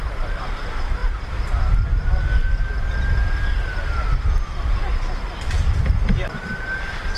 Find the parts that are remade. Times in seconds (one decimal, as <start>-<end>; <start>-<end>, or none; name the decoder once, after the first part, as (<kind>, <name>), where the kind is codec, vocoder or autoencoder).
none